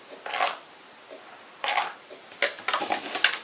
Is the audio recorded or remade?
recorded